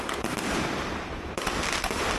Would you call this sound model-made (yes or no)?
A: yes